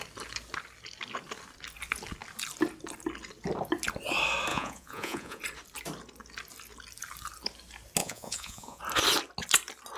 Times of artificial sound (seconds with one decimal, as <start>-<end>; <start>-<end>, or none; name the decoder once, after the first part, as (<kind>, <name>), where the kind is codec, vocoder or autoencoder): 4.5-5.4 (vocoder, Vocos); 8.0-8.8